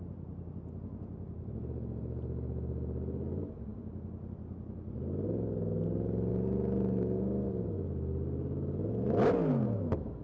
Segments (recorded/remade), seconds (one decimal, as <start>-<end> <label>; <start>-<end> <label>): 0.0-10.2 recorded

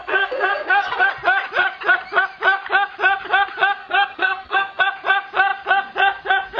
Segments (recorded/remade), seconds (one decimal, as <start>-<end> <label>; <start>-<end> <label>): 0.0-1.1 remade; 1.1-3.8 recorded; 3.8-4.8 remade; 4.8-6.6 recorded

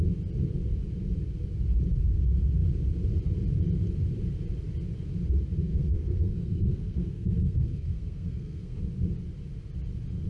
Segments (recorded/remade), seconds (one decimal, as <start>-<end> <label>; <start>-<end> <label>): 0.0-5.7 recorded; 5.7-8.8 remade; 8.8-10.3 recorded

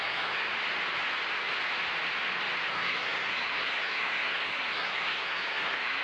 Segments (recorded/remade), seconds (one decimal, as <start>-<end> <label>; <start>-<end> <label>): 0.0-0.5 remade; 0.5-2.7 recorded; 2.7-6.0 remade

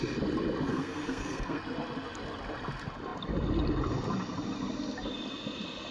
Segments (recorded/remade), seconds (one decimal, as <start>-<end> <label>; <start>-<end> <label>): 0.0-0.7 recorded; 0.7-1.6 remade; 1.6-5.9 recorded

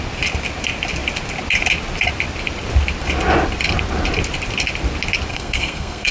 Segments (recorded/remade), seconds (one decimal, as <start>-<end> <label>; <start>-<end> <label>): 0.0-5.3 recorded; 5.3-6.1 remade